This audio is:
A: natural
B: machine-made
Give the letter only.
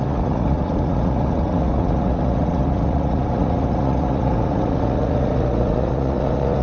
B